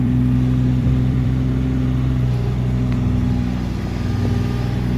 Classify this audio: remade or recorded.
remade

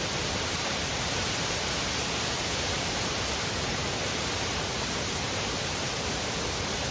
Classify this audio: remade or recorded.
remade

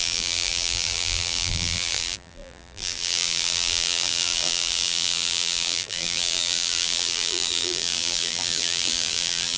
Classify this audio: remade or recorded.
remade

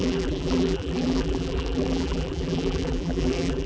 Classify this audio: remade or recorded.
remade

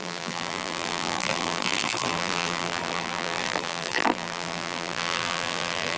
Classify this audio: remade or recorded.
remade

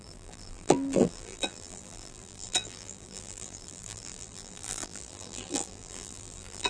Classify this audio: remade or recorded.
remade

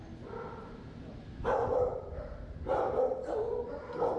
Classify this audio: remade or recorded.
remade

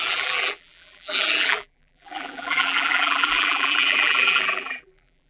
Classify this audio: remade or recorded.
remade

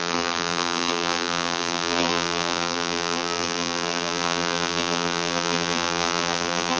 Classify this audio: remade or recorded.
remade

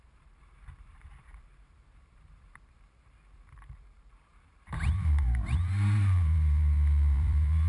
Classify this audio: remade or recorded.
remade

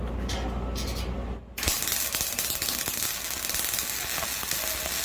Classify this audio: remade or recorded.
recorded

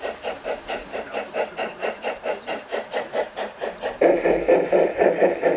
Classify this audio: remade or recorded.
remade